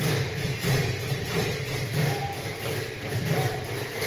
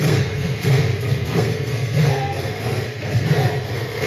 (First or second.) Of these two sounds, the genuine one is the first